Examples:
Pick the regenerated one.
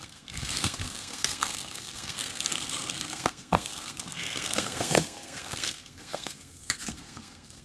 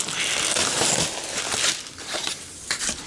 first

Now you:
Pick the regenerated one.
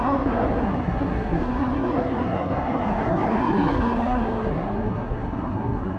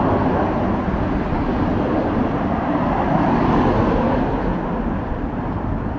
first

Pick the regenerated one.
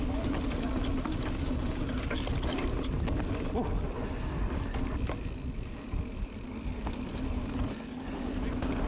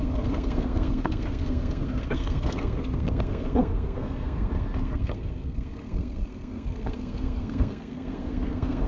second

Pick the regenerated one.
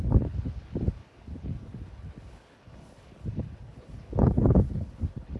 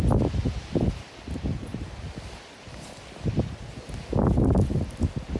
first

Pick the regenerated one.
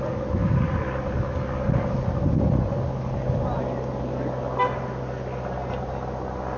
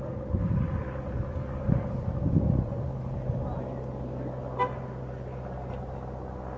second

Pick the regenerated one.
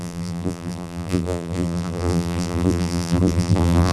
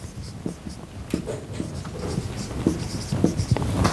first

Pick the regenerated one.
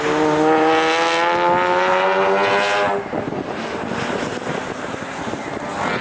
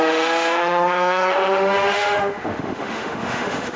second